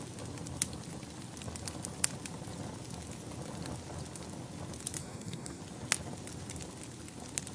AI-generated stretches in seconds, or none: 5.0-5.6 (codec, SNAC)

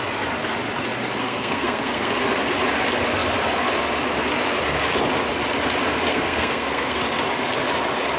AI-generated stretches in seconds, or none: 1.2-2.1 (codec, SNAC); 6.1-7.0

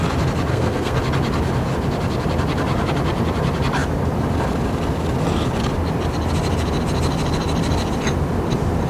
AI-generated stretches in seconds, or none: 0.5-1.0 (codec, SNAC)

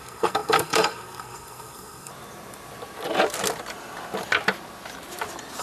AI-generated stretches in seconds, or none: 0.0-2.1 (codec, SNAC)

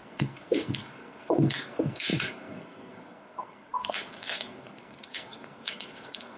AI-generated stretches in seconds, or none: 0.0-6.4 (codec, SNAC)

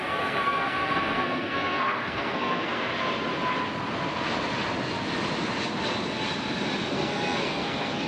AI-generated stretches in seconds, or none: 0.0-2.9 (codec, SNAC); 6.9-8.1

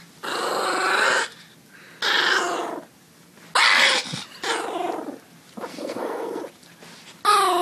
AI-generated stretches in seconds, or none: 5.7-6.4 (codec, SNAC)